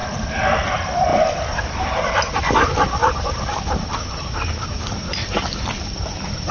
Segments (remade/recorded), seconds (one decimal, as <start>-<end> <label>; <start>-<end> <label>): 0.0-0.7 remade; 0.7-1.1 recorded; 1.1-2.2 remade; 2.2-3.0 recorded; 3.0-3.8 remade; 3.8-6.5 recorded

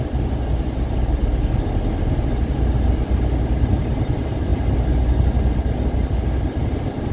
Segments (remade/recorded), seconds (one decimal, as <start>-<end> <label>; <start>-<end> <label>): 0.0-7.1 recorded

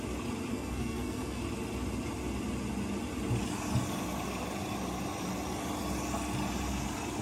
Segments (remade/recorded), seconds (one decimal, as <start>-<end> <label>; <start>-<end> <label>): 0.0-0.5 recorded; 0.5-1.4 remade; 1.4-7.2 recorded

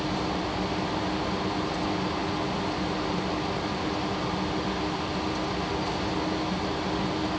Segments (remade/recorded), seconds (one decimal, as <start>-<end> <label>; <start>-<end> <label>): 0.0-7.4 recorded

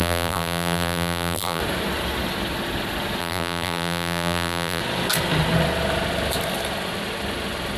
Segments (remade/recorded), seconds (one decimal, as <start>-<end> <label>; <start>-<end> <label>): 0.0-1.6 remade; 1.6-3.2 recorded; 3.2-4.8 remade; 4.8-7.8 recorded

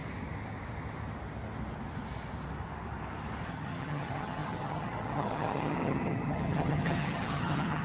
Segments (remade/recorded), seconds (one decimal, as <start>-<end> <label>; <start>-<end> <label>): 0.0-3.5 recorded; 3.5-7.8 remade